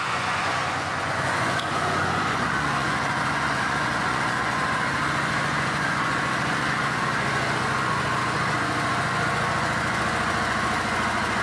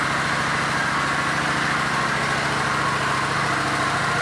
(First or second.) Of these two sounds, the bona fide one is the second